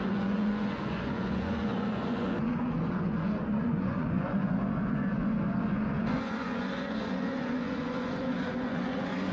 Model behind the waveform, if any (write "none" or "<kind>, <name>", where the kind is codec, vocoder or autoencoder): vocoder, Vocos